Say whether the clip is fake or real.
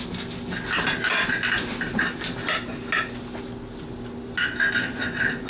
real